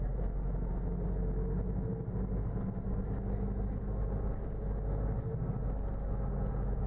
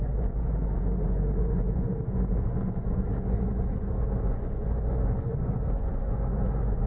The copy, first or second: second